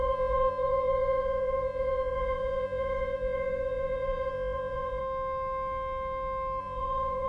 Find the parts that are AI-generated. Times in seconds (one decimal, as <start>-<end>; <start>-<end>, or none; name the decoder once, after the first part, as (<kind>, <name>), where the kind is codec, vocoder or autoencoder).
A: 0.0-5.0 (vocoder, Vocos); 6.6-7.3

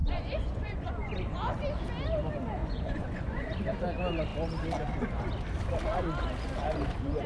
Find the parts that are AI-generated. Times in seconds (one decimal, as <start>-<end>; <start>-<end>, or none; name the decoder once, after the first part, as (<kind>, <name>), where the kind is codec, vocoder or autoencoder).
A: 0.0-1.1 (vocoder, Vocos); 2.6-3.5

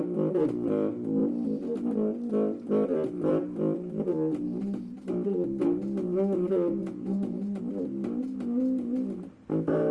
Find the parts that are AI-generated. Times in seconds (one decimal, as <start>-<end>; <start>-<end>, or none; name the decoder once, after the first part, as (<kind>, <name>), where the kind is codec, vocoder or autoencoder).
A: 6.8-7.6 (vocoder, Vocos)